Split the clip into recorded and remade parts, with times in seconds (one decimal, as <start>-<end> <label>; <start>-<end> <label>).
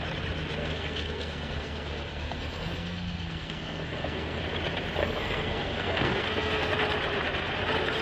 0.0-0.6 recorded; 0.6-4.4 remade; 4.4-5.0 recorded; 5.0-6.7 remade; 6.7-8.0 recorded